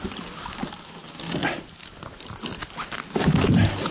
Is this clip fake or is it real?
real